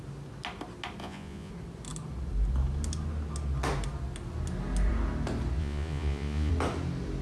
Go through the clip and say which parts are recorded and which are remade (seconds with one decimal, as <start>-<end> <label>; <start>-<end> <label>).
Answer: 0.0-1.0 recorded; 1.0-1.5 remade; 1.5-5.6 recorded; 5.6-6.5 remade; 6.5-7.2 recorded